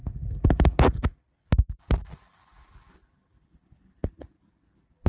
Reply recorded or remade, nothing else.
remade